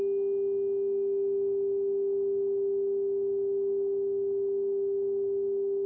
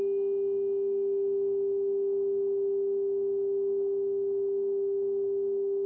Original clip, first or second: first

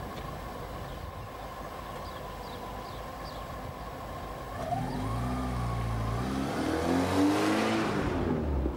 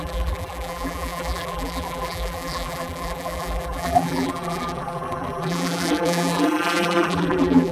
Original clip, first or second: first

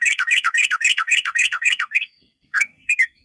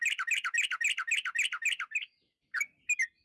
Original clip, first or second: second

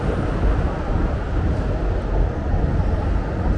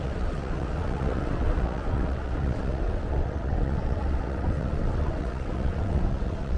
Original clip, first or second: first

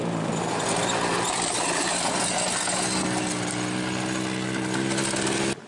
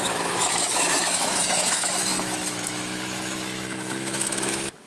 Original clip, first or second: first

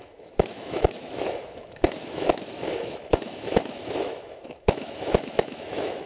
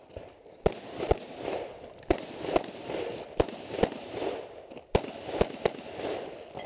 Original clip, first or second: second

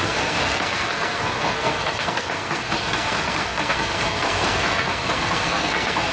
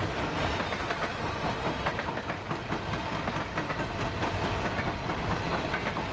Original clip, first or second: second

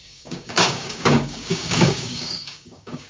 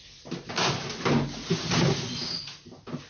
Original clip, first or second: second